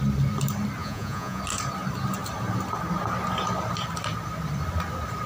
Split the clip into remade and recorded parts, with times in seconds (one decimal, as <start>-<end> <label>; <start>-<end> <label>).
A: 0.0-0.8 recorded; 0.8-1.4 remade; 1.4-5.3 recorded